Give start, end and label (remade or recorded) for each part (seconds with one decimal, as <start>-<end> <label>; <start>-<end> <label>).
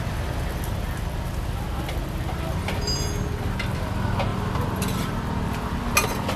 0.0-4.3 recorded; 4.3-5.8 remade; 5.8-6.4 recorded